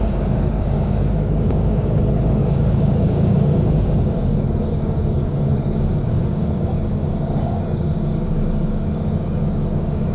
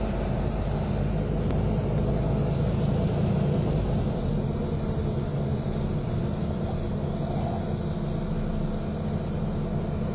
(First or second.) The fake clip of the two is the first